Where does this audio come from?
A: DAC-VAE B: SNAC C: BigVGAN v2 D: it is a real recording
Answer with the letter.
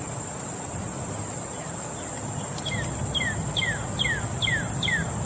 D